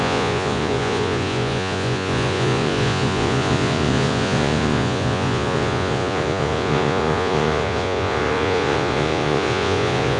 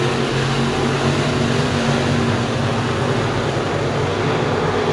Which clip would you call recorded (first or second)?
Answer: second